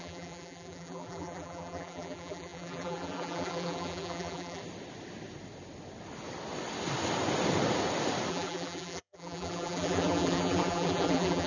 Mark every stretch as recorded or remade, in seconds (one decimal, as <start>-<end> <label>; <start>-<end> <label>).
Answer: 0.0-4.6 remade; 4.6-8.3 recorded; 8.3-11.5 remade